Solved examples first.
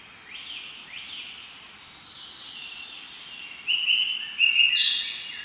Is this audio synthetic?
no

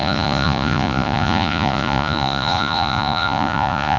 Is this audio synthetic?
yes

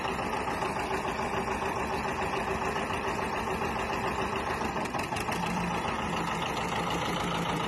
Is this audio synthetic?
yes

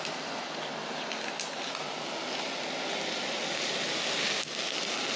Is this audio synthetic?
no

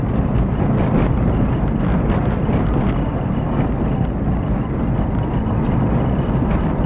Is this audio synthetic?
no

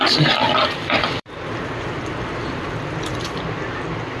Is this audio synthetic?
yes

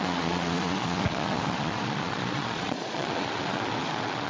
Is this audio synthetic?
yes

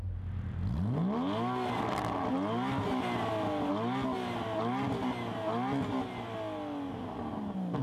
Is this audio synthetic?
no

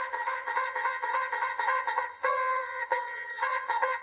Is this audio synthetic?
yes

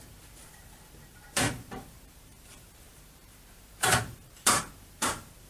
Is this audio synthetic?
yes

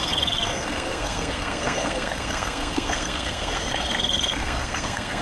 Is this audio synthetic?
yes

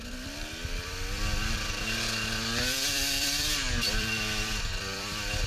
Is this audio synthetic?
yes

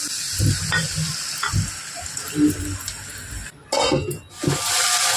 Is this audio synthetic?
no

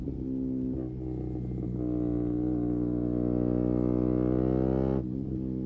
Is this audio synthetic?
no